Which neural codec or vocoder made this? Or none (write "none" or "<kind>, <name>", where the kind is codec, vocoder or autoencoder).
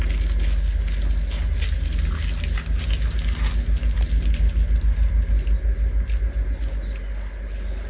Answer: none